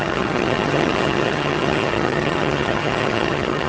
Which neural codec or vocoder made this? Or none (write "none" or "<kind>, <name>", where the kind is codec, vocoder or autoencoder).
vocoder, HiFi-GAN